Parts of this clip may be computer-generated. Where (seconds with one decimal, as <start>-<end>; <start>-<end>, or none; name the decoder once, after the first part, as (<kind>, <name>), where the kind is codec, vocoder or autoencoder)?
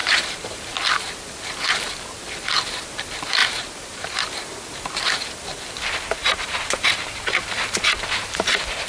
0.0-0.7 (vocoder, BigVGAN v2); 3.4-4.2; 6.2-7.8